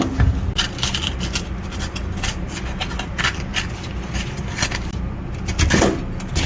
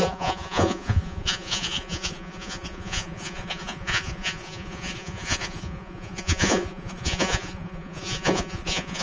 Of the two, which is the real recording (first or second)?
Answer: first